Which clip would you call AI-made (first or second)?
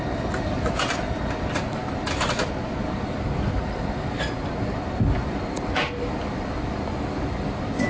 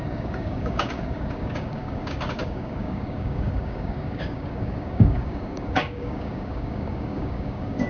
second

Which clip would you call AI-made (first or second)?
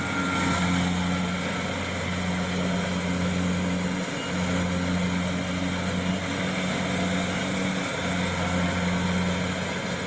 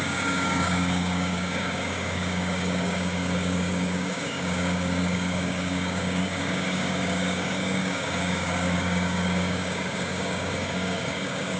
second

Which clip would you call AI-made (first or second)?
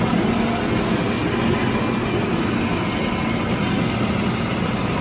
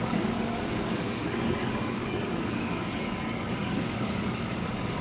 second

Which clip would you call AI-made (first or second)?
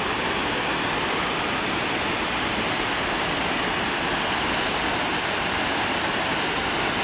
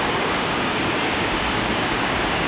second